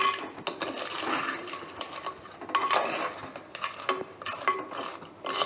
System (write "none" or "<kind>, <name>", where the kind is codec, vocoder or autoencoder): none